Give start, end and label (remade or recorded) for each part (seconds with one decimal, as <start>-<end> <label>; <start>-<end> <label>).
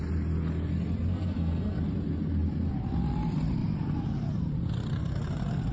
0.0-1.1 recorded; 1.1-1.8 remade; 1.8-5.7 recorded